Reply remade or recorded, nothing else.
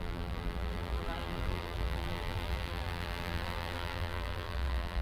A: remade